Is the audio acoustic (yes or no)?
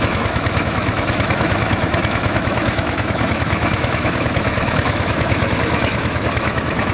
no